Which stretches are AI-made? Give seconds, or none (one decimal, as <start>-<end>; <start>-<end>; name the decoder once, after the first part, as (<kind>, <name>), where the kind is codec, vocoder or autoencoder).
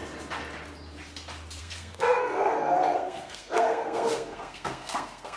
1.6-5.4 (codec, SNAC)